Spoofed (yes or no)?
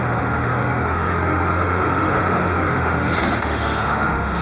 yes